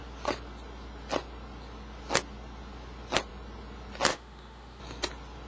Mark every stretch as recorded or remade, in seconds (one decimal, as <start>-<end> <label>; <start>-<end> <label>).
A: 0.0-4.1 recorded; 4.1-4.8 remade; 4.8-5.5 recorded